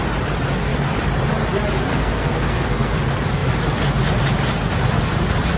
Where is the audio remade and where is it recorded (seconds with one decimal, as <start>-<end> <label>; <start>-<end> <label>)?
0.0-1.9 recorded; 1.9-3.0 remade; 3.0-5.6 recorded